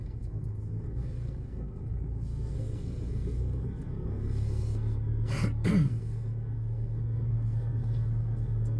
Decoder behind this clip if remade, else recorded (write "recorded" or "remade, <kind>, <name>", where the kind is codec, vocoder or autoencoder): remade, codec, SNAC